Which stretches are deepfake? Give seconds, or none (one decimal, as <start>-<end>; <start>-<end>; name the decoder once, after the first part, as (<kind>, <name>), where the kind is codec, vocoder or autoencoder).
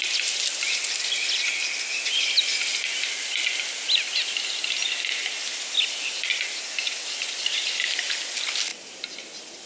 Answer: none